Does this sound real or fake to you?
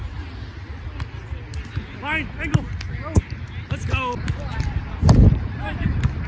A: real